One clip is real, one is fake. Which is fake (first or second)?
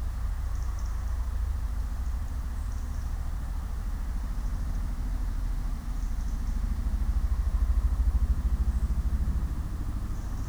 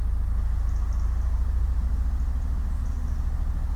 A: first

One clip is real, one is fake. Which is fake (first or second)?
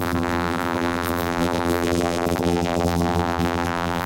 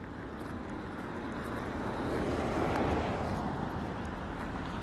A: first